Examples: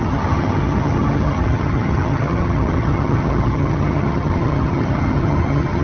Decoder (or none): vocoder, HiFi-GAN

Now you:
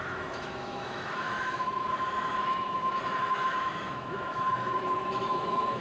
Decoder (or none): autoencoder, DAC-VAE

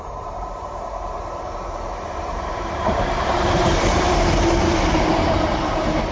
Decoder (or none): vocoder, BigVGAN v2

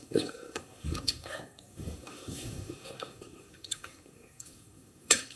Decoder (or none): codec, SNAC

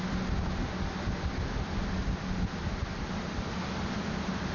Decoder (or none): none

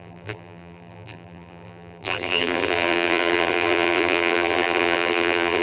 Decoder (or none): vocoder, BigVGAN v2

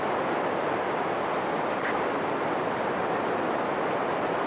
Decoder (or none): none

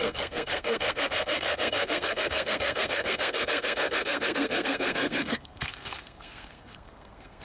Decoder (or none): codec, SNAC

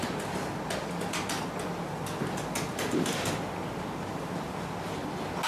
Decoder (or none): none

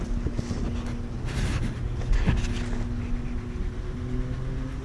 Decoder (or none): none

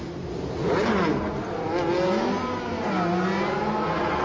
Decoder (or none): none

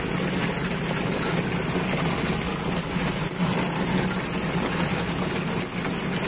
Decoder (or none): none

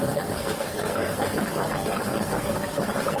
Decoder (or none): codec, SNAC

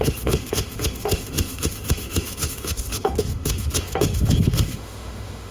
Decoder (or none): autoencoder, DAC-VAE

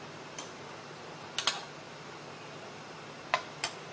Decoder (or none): none